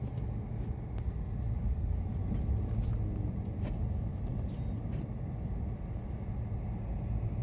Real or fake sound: real